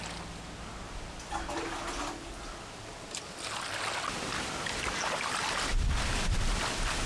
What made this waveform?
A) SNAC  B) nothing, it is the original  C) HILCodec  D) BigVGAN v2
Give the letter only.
B